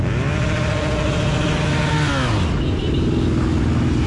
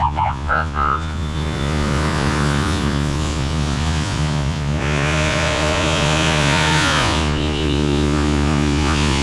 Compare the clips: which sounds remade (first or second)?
second